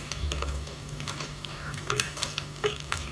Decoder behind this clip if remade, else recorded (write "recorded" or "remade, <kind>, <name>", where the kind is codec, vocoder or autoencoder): remade, codec, DAC